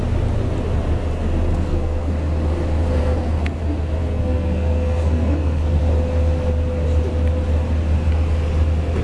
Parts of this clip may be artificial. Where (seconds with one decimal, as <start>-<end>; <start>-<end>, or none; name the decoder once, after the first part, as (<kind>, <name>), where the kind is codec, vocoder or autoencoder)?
1.5-2.1 (codec, SNAC); 3.0-3.6; 4.0-5.8